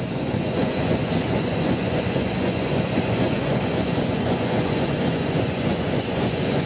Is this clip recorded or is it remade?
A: remade